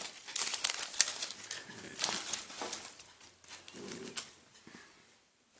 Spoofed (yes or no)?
no